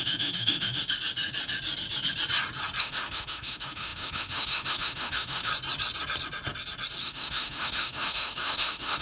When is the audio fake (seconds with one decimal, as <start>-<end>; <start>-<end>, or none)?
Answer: 0.0-0.8; 2.8-5.5; 7.0-9.0